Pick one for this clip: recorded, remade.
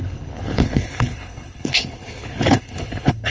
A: remade